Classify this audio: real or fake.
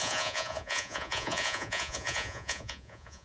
fake